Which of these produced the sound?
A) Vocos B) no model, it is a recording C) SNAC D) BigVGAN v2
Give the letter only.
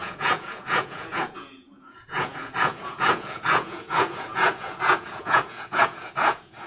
A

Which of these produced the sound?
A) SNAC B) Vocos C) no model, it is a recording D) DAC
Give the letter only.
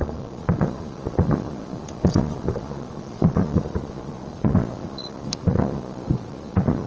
B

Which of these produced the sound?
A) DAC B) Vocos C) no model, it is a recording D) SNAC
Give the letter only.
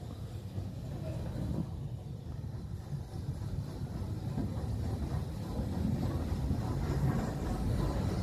C